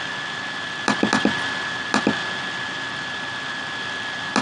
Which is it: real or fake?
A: real